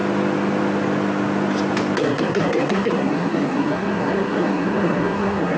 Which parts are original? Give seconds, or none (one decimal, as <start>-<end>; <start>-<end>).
0.0-2.0